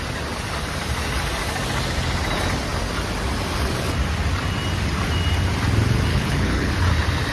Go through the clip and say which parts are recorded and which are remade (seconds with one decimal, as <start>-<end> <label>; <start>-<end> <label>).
0.0-6.1 recorded; 6.1-6.7 remade; 6.7-7.3 recorded